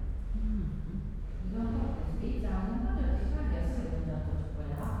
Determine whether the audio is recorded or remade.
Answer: recorded